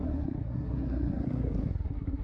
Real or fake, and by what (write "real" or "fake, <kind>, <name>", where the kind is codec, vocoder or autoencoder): fake, codec, SNAC